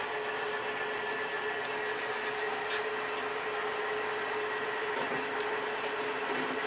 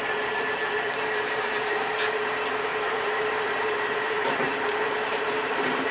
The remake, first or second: second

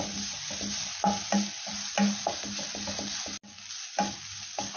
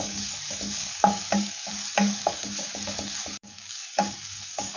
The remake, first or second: second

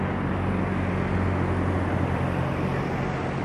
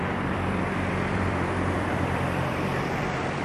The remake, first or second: second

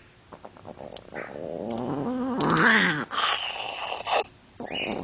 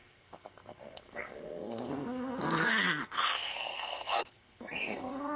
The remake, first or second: second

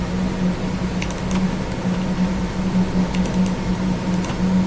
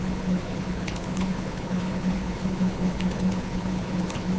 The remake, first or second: second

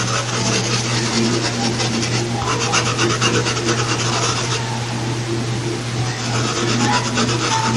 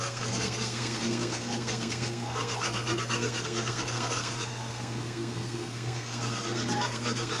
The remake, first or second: second